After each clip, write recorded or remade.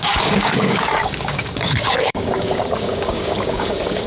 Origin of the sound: remade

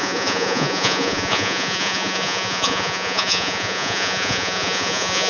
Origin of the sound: remade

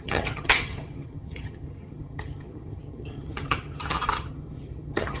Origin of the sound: remade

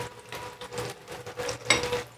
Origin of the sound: recorded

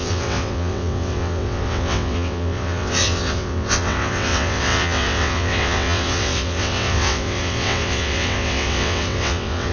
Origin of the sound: remade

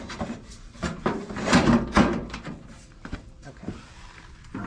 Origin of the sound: remade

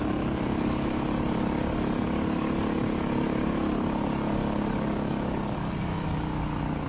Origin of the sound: remade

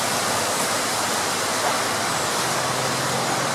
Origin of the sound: recorded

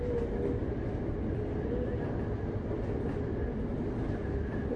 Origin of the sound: recorded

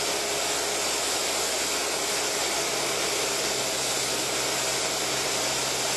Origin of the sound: recorded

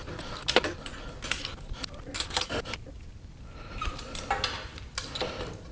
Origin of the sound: recorded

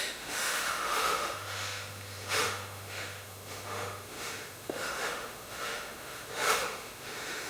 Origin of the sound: remade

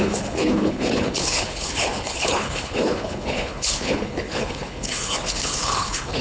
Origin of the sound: remade